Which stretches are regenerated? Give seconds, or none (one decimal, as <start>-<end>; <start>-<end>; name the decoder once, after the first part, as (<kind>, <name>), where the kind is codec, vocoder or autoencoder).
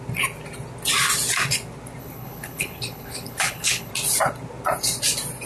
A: 2.0-3.9 (codec, HILCodec)